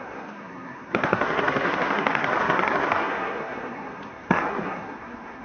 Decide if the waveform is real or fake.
fake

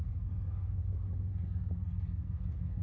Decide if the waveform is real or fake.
fake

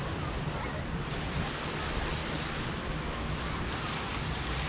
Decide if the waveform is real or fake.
real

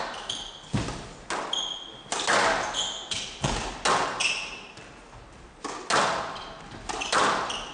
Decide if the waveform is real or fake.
real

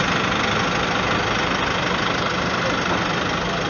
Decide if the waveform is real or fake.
real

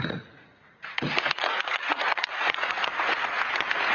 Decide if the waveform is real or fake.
fake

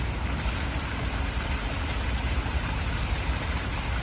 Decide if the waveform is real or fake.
real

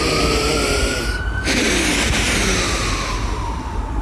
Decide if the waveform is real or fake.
real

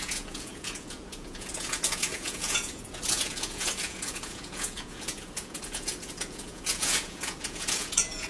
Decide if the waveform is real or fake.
fake